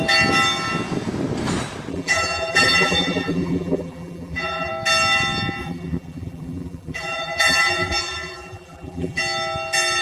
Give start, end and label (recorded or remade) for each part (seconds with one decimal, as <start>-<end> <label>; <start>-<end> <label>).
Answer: 0.0-1.9 recorded; 1.9-4.7 remade; 4.7-5.6 recorded; 5.6-9.2 remade; 9.2-10.0 recorded